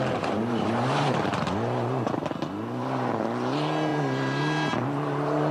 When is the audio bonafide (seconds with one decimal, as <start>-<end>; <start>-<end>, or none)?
0.0-5.5